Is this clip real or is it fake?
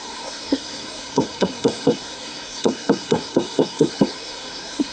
fake